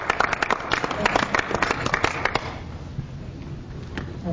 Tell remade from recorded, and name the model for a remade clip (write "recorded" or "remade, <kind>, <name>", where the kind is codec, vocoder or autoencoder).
recorded